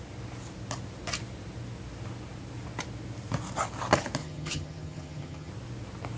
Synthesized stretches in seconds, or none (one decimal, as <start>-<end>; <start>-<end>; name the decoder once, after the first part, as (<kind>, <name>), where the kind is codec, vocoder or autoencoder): 4.2-5.5 (vocoder, HiFi-GAN)